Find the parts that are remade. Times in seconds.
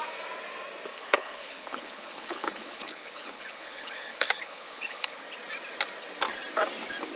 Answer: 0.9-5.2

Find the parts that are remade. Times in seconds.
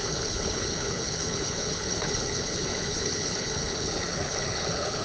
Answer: 0.0-5.0